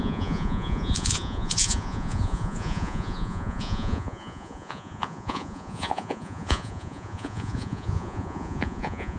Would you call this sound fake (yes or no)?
yes